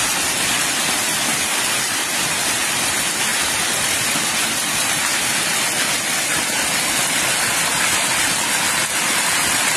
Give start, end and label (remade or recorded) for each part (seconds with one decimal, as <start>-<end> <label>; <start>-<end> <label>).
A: 0.0-9.8 recorded